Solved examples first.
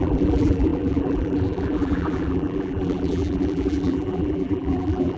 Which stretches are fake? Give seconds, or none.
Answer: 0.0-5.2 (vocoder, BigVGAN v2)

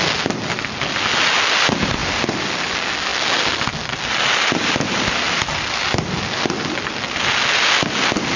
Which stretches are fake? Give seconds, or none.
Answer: none